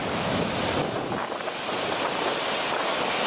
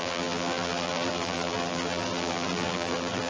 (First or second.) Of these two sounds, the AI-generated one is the second